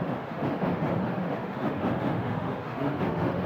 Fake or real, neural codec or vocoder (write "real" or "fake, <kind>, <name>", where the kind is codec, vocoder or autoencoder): fake, autoencoder, DAC-VAE